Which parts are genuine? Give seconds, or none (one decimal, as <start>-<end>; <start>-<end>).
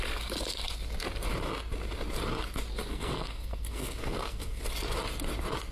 0.0-2.9; 4.6-5.7